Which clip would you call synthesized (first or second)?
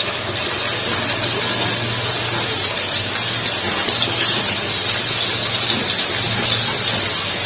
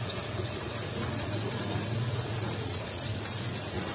second